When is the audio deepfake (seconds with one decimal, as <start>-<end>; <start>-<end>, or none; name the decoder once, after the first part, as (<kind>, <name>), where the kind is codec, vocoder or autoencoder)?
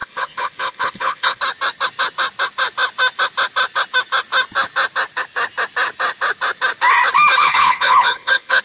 0.0-1.4 (codec, HILCodec); 7.4-8.6